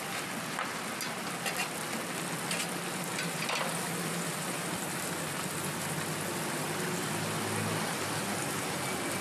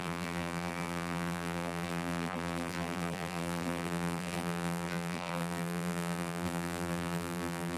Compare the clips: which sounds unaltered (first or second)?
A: first